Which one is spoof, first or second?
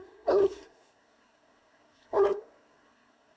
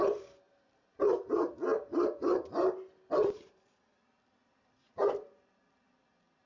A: first